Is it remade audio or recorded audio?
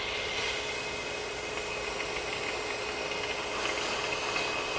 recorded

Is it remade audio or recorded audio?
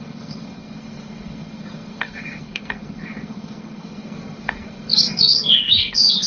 remade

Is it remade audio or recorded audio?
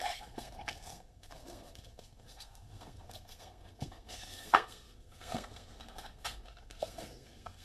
remade